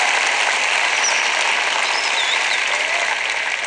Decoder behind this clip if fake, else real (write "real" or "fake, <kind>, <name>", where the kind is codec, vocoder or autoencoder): real